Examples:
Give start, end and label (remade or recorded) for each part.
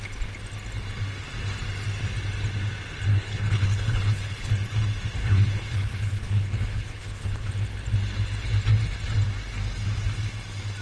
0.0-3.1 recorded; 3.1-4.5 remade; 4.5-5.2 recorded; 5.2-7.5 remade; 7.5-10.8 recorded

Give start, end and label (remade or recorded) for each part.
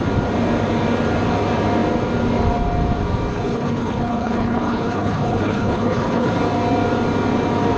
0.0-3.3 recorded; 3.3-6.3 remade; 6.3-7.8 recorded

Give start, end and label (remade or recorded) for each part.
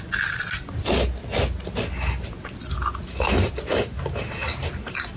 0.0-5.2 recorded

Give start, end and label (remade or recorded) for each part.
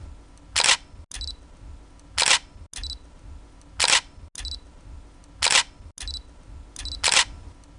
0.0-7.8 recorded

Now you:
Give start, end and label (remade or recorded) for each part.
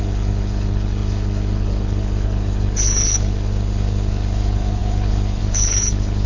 0.0-6.3 remade